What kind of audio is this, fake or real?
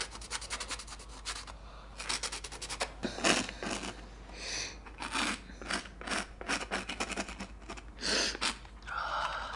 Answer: real